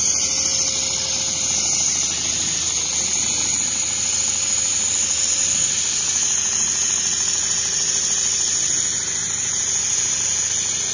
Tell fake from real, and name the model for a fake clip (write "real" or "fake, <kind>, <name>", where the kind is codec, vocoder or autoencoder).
real